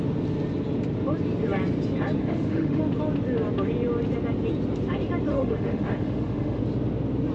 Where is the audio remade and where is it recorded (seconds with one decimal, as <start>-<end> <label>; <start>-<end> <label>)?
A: 0.0-2.2 recorded; 2.2-2.8 remade; 2.8-5.3 recorded; 5.3-6.6 remade; 6.6-7.3 recorded